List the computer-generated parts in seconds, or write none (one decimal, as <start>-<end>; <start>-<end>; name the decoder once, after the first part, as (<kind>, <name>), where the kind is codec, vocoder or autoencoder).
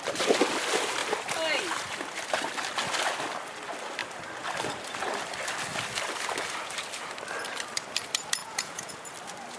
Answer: 8.4-9.1 (vocoder, Vocos)